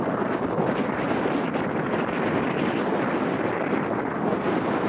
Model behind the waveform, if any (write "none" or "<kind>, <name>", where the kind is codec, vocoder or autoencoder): none